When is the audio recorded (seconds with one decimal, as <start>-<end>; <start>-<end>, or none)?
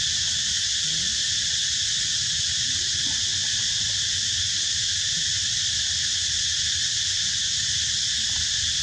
0.0-8.8